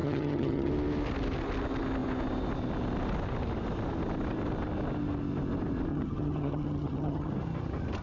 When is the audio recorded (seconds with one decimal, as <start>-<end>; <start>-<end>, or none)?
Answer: 0.7-5.9; 7.3-8.0